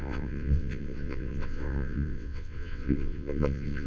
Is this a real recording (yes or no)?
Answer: no